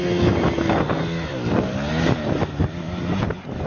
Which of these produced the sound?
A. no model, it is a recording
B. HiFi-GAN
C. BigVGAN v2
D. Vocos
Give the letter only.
A